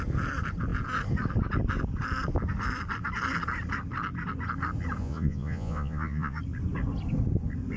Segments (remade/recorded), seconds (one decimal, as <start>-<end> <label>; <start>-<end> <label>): 0.0-5.0 recorded; 5.0-6.4 remade; 6.4-7.8 recorded